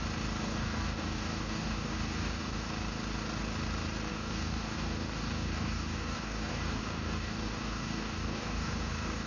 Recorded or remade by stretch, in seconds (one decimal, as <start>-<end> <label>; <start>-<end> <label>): 0.0-0.4 recorded; 0.4-2.7 remade; 2.7-4.1 recorded; 4.1-9.3 remade